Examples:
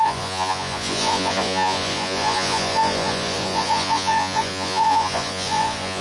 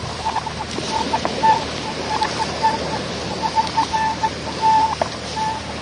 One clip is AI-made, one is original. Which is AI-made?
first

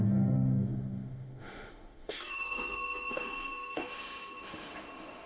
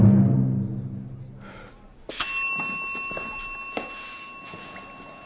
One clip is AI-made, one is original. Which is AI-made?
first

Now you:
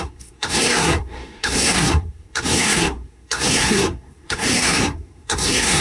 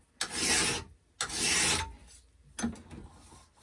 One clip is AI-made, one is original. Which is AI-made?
first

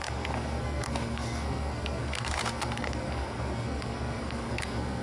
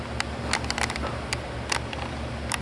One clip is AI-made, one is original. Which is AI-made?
first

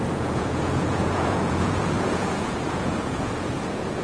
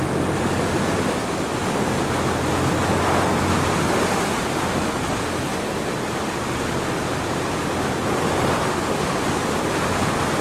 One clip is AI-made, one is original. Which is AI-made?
first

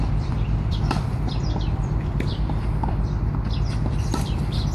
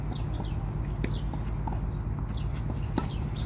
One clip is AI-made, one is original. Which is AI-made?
first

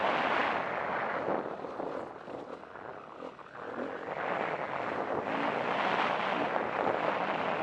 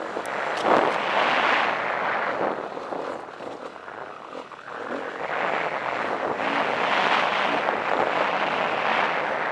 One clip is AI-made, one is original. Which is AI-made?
first